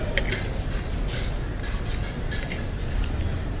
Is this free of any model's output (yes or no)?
yes